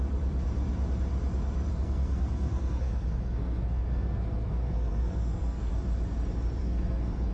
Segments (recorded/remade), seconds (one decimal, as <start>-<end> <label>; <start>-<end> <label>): 0.0-1.7 recorded; 1.7-5.7 remade; 5.7-6.6 recorded; 6.6-7.3 remade